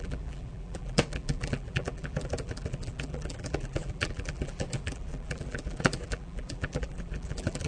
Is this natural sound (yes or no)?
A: no